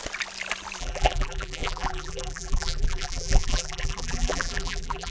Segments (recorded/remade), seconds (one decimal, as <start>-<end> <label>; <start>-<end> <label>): 0.0-0.8 recorded; 0.8-5.1 remade